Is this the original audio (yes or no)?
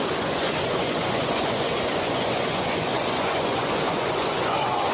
no